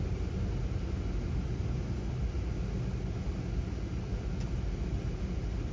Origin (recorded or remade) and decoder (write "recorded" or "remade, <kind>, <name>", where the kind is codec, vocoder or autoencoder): recorded